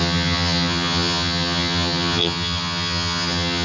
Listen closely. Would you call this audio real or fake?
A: fake